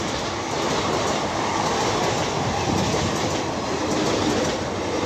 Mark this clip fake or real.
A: real